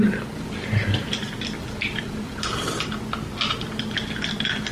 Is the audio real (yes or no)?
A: yes